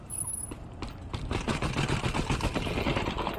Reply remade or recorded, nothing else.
recorded